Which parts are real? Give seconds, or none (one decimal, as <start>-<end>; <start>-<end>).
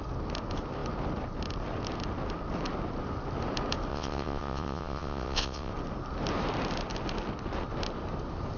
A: 0.0-3.9; 5.7-8.6